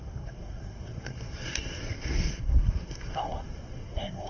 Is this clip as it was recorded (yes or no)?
no